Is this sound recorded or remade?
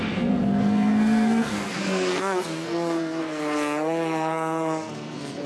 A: remade